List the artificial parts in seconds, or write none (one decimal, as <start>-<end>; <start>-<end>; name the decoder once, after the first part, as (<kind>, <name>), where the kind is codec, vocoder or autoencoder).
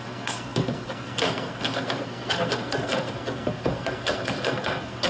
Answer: 0.0-5.1 (codec, SNAC)